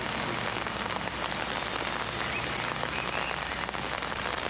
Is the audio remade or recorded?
recorded